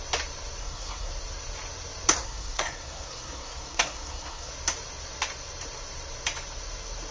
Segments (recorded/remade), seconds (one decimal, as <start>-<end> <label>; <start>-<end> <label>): 0.0-0.6 recorded; 0.6-1.1 remade; 1.1-2.2 recorded; 2.2-4.5 remade; 4.5-7.1 recorded